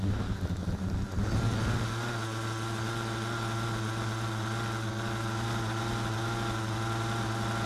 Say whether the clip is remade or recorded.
recorded